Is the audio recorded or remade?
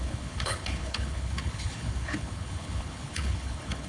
remade